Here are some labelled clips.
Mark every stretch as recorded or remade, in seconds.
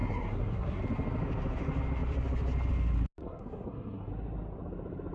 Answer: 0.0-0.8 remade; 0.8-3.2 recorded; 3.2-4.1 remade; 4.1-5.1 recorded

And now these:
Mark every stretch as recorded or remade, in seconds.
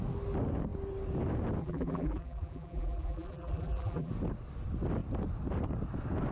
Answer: 0.0-1.6 recorded; 1.6-4.1 remade; 4.1-6.3 recorded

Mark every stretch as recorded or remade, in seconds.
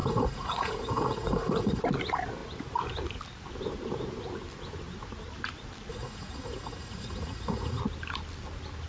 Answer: 0.0-1.8 remade; 1.8-5.9 recorded; 5.9-7.8 remade; 7.8-8.9 recorded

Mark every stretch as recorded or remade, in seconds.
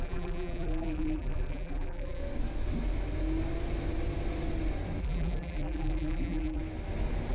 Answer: 0.0-2.2 remade; 2.2-5.0 recorded; 5.0-6.6 remade; 6.6-7.3 recorded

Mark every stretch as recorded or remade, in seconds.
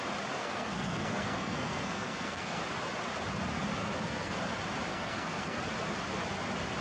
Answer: 0.0-0.4 recorded; 0.4-2.6 remade; 2.6-3.8 recorded; 3.8-4.4 remade; 4.4-4.9 recorded; 4.9-5.6 remade; 5.6-6.8 recorded